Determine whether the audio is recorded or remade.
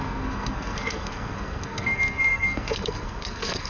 remade